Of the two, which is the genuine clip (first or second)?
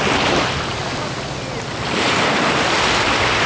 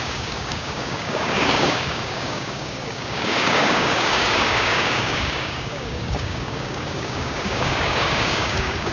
first